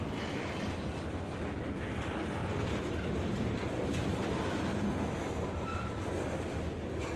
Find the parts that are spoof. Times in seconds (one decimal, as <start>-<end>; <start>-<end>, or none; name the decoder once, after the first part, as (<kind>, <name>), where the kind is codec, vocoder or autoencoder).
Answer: none